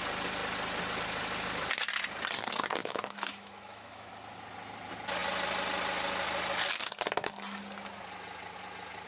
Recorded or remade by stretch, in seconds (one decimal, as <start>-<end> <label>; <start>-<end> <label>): 0.0-2.8 recorded; 2.8-4.1 remade; 4.1-9.1 recorded